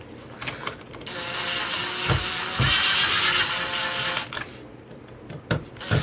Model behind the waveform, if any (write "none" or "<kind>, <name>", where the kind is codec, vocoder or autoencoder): none